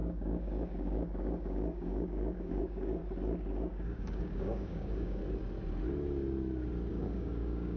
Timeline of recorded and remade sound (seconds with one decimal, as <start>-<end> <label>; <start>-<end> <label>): 0.0-3.0 remade; 3.0-3.5 recorded; 3.5-5.2 remade; 5.2-6.9 recorded; 6.9-7.8 remade